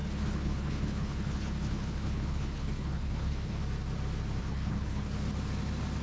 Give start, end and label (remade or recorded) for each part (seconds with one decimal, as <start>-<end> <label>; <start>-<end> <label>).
0.0-3.6 remade; 3.6-4.4 recorded; 4.4-5.1 remade; 5.1-6.0 recorded